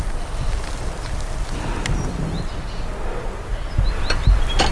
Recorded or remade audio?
recorded